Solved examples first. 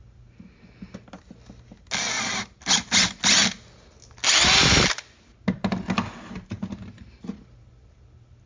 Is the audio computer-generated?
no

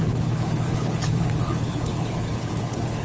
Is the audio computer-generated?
yes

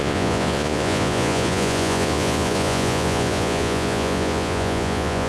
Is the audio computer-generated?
yes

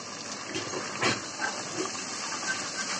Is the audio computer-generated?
no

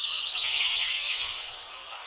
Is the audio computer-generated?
yes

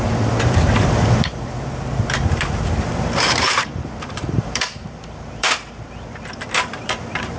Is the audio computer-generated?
yes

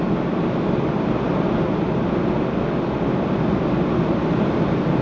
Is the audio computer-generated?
no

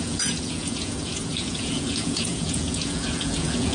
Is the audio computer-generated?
yes